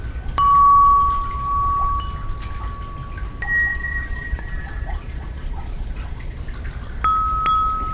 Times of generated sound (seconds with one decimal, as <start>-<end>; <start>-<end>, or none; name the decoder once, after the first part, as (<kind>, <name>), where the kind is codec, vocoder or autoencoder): 3.7-6.4 (vocoder, Vocos)